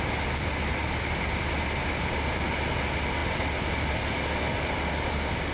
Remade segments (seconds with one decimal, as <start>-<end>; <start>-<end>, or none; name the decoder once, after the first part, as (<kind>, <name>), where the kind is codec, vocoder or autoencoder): none